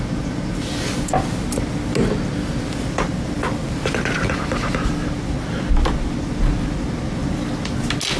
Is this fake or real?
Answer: real